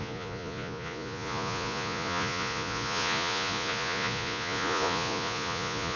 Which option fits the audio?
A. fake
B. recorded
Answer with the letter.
A